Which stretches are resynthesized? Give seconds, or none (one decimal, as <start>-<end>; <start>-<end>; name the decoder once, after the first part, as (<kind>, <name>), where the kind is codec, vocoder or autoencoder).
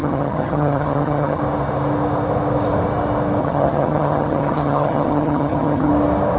0.0-1.4 (vocoder, HiFi-GAN); 3.4-5.9